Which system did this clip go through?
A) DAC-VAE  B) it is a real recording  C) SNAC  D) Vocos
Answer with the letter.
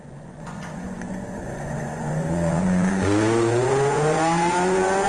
D